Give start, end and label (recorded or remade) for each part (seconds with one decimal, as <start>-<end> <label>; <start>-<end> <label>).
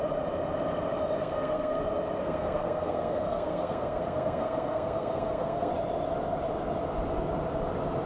0.0-1.2 recorded; 1.2-1.8 remade; 1.8-2.2 recorded; 2.2-5.7 remade; 5.7-8.1 recorded